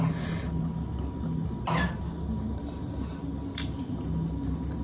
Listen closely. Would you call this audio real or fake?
real